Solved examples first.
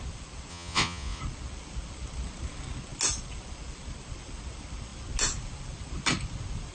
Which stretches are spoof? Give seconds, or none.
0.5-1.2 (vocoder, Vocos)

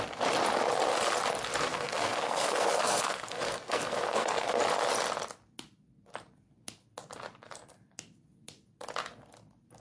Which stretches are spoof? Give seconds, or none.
1.7-4.6 (codec, SNAC)

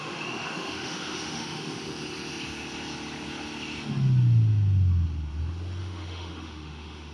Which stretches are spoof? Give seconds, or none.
0.0-1.8 (autoencoder, DAC-VAE); 5.8-7.1

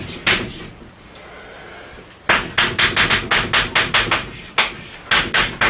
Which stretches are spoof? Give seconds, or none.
none